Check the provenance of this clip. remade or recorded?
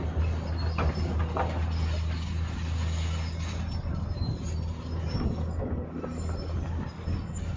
recorded